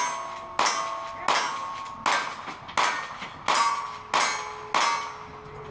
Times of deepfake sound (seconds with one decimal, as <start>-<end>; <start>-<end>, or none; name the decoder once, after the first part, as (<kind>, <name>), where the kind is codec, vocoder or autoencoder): none

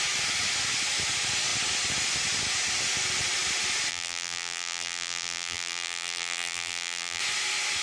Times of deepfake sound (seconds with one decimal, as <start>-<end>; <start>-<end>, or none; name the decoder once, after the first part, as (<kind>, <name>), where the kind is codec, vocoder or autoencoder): 3.9-7.2 (vocoder, BigVGAN v2)

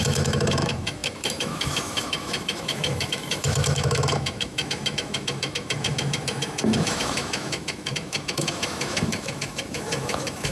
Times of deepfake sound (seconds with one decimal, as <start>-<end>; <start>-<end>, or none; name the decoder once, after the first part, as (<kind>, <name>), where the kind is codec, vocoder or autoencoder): 0.0-10.5 (autoencoder, DAC-VAE)

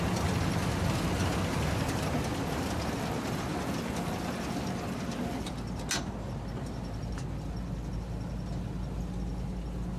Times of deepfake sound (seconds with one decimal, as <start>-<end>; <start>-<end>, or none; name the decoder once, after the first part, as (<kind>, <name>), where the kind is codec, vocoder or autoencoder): none

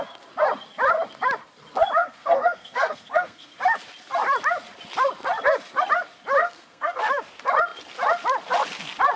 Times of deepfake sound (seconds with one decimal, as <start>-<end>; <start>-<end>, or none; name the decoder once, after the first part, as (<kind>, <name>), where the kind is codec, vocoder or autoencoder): 2.0-3.5 (codec, SNAC); 6.4-7.0

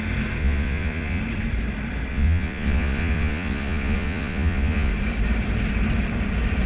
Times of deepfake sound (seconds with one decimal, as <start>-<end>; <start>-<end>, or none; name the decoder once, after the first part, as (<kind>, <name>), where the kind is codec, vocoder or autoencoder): 0.4-1.2 (vocoder, Vocos); 2.1-4.9

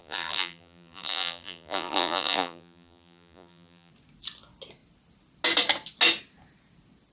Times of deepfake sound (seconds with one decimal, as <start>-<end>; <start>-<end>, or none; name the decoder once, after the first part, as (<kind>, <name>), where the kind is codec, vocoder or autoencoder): 0.0-3.9 (vocoder, BigVGAN v2)

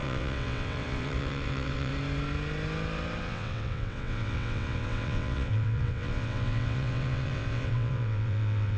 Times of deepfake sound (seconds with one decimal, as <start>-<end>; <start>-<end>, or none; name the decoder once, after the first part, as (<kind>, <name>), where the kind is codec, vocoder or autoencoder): 0.0-1.9 (vocoder, WaveNeXt); 3.2-8.8